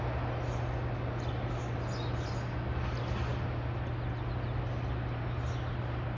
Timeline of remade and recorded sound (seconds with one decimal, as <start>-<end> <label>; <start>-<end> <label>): 0.0-6.2 recorded